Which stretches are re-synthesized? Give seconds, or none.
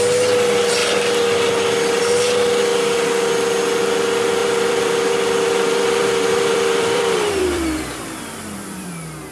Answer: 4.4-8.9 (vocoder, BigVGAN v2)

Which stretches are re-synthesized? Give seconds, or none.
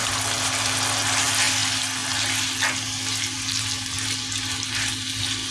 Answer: none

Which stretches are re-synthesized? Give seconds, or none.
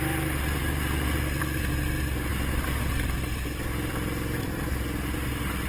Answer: 2.3-5.7 (vocoder, BigVGAN v2)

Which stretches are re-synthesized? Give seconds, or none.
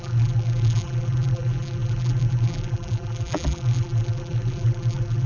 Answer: 0.0-5.3 (vocoder, BigVGAN v2)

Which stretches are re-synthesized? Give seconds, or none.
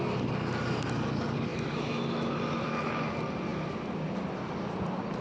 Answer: 1.5-2.3 (autoencoder, DAC-VAE)